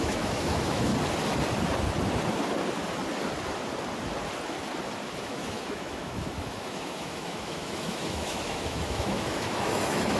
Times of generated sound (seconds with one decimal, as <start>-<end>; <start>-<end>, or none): 0.0-0.9; 5.2-10.2